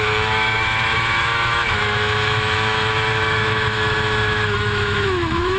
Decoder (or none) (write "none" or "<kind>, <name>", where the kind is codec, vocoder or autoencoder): autoencoder, DAC-VAE